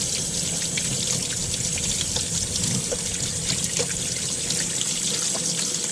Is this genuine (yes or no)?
yes